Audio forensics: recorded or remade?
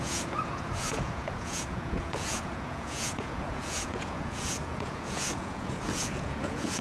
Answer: remade